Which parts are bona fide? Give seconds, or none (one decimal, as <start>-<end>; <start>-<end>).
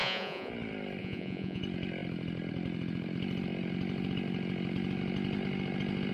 0.5-1.0; 1.6-6.1